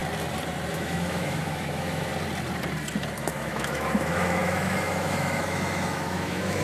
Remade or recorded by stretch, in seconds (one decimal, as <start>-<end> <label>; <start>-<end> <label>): 0.0-0.7 recorded; 0.7-2.1 remade; 2.1-3.2 recorded; 3.2-6.6 remade